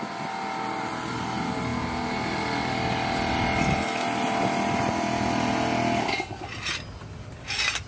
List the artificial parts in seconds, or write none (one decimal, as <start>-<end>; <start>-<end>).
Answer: none